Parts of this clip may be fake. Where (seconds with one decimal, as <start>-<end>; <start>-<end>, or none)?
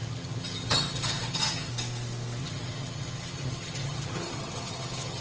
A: 0.0-1.7; 2.4-5.2